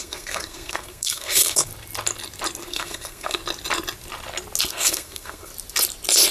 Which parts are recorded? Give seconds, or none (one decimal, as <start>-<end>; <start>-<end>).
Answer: 1.7-2.6; 3.4-4.7; 5.5-6.3